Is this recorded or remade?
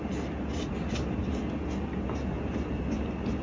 recorded